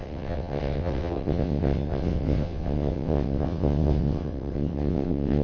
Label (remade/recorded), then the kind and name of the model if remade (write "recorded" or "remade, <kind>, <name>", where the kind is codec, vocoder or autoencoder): remade, vocoder, WaveNeXt